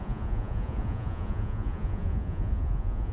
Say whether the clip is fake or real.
fake